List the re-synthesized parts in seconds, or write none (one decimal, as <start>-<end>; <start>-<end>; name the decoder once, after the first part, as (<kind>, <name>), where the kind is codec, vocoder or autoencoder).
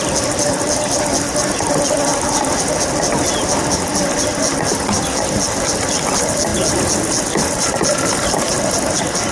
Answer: none